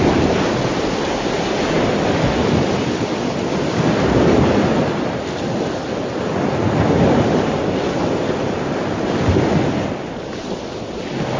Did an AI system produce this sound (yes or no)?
no